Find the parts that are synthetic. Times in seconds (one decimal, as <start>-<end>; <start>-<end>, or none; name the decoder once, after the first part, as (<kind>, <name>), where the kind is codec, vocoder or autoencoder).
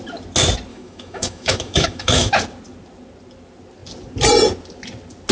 0.7-2.4 (autoencoder, DAC-VAE)